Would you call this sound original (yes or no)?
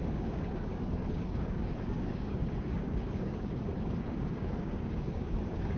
no